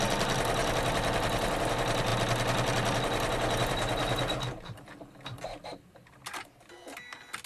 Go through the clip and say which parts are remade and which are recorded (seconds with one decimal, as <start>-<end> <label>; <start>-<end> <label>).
0.0-7.5 recorded